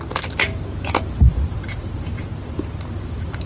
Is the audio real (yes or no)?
yes